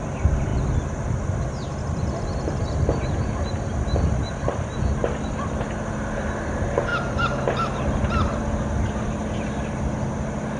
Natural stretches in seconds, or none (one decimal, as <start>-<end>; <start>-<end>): 0.0-10.6